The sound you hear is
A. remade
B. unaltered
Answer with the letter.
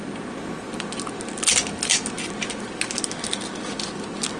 B